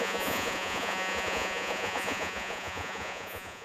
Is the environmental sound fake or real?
fake